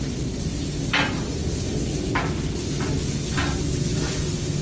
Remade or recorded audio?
recorded